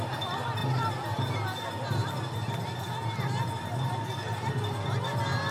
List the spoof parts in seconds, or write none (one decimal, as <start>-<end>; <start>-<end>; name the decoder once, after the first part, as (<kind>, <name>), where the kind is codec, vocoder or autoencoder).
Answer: none

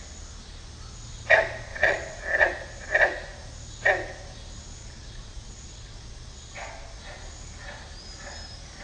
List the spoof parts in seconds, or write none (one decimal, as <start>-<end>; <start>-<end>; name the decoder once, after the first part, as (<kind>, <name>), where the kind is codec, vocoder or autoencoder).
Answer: 1.7-2.2 (vocoder, Vocos); 4.8-7.0

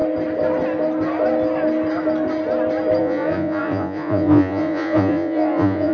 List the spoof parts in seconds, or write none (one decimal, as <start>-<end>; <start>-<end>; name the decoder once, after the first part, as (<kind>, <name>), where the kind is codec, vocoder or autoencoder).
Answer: 3.0-5.9 (vocoder, Vocos)

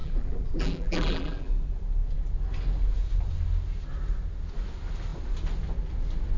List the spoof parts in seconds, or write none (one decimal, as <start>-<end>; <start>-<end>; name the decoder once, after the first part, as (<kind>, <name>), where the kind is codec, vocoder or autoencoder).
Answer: 0.0-1.5 (vocoder, BigVGAN v2)

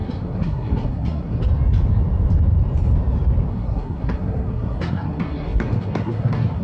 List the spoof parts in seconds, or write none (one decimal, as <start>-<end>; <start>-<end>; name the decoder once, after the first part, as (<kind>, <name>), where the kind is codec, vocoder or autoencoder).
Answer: 0.0-1.4 (codec, SNAC); 3.5-6.6